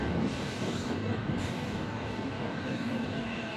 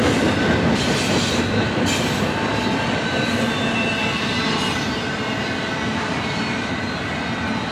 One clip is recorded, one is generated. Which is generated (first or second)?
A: first